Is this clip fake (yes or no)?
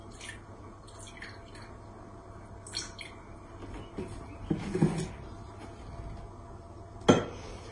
no